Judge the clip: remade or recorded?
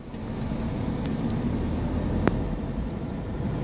recorded